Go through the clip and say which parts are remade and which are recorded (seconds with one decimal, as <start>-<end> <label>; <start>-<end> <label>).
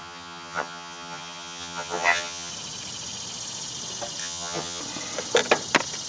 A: 0.0-2.5 remade; 2.5-4.2 recorded; 4.2-4.8 remade; 4.8-6.1 recorded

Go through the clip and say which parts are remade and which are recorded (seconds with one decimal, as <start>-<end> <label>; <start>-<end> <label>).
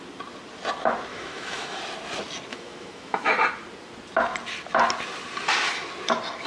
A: 0.0-1.1 recorded; 1.1-1.8 remade; 1.8-2.5 recorded; 2.5-3.3 remade; 3.3-6.5 recorded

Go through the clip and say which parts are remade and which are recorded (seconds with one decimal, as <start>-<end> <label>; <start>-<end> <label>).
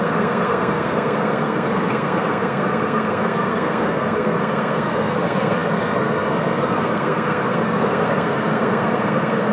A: 0.0-9.5 remade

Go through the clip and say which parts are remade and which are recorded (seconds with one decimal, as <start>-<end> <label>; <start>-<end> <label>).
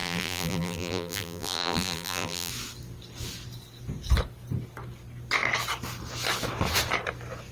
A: 0.0-2.5 remade; 2.5-7.5 recorded